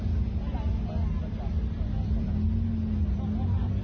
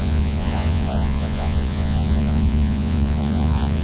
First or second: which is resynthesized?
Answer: second